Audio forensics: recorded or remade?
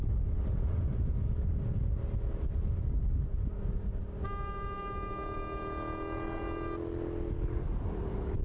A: recorded